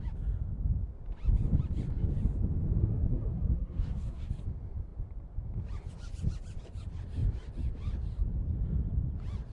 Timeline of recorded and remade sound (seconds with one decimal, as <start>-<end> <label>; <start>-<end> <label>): 0.0-2.8 recorded; 2.8-4.3 remade; 4.3-9.5 recorded